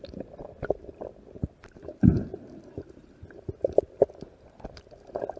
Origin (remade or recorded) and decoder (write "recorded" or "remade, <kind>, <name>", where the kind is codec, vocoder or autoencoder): recorded